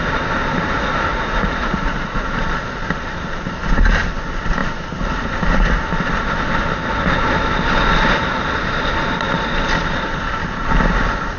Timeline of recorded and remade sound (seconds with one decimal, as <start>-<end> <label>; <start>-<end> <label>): 0.0-1.1 recorded; 1.1-2.3 remade; 2.3-11.4 recorded